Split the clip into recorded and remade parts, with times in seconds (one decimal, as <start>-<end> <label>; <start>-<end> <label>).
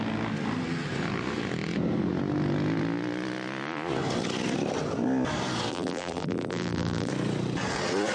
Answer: 0.0-5.7 recorded; 5.7-7.1 remade; 7.1-8.1 recorded